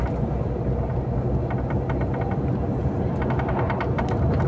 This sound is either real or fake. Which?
real